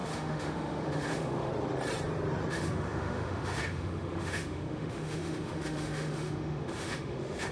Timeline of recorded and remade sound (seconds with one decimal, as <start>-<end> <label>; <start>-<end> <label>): 0.0-1.5 remade; 1.5-2.5 recorded; 2.5-7.5 remade